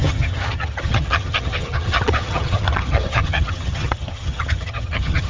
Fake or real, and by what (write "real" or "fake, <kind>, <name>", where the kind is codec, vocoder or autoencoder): fake, vocoder, HiFi-GAN